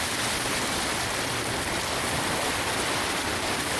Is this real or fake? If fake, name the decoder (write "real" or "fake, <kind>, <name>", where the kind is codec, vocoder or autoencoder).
real